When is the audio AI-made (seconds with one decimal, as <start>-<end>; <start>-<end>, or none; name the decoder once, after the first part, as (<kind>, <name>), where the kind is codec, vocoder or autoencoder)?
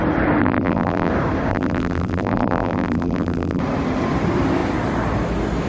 0.4-1.1 (vocoder, BigVGAN v2); 1.5-3.6